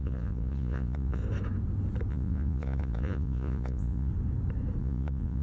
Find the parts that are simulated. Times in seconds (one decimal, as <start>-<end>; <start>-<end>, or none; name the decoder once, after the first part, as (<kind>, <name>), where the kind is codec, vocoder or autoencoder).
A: 0.0-1.2 (vocoder, Vocos); 2.1-4.1; 4.8-5.4